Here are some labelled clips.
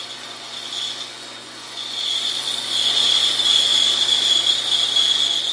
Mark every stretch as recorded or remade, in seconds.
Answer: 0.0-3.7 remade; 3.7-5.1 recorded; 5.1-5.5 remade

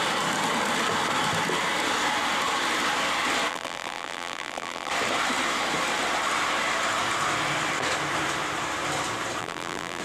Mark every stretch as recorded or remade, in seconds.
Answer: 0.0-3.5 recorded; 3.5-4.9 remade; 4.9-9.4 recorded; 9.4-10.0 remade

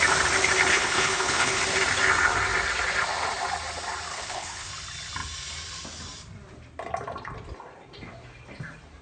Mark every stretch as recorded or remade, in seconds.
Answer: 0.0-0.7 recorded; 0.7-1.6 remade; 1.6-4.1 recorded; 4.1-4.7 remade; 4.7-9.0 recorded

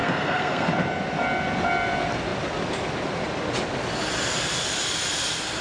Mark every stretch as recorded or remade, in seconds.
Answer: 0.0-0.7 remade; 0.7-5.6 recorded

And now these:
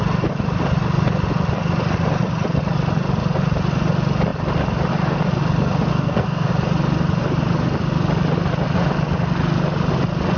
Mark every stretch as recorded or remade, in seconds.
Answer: 0.0-5.9 recorded; 5.9-6.5 remade; 6.5-10.4 recorded

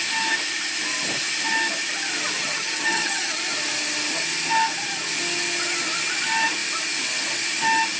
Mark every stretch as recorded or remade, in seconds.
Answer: 0.0-2.4 recorded; 2.4-3.4 remade; 3.4-8.0 recorded

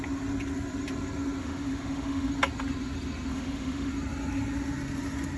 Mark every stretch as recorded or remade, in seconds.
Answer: 0.0-1.4 recorded; 1.4-2.3 remade; 2.3-3.3 recorded; 3.3-3.9 remade; 3.9-5.4 recorded

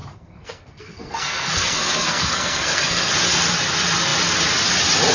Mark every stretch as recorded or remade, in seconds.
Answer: 0.0-3.1 remade; 3.1-5.1 recorded